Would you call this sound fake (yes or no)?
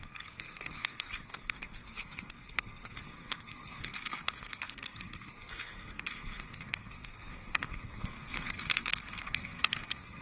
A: yes